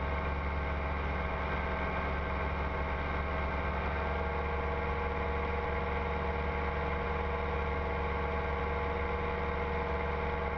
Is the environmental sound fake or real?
real